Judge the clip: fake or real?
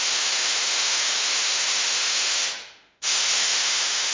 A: fake